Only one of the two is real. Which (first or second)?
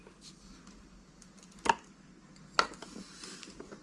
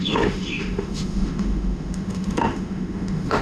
first